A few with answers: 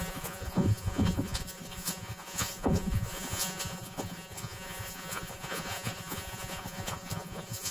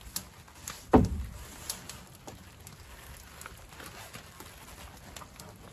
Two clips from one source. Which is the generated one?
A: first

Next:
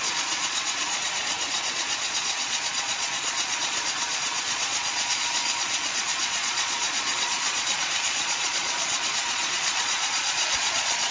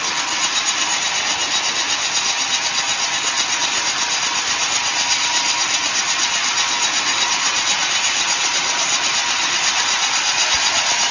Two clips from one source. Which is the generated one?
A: first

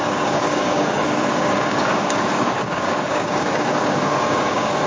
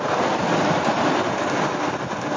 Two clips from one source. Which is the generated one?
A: first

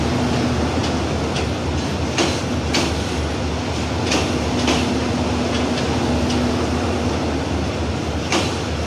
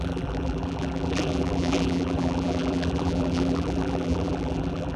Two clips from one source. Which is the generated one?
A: second